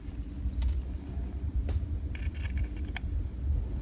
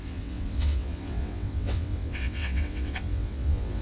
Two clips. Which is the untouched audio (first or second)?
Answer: first